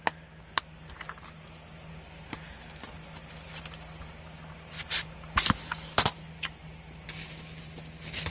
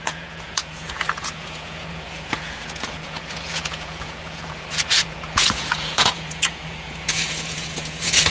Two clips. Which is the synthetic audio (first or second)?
second